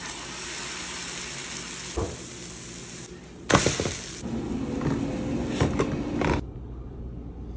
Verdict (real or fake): real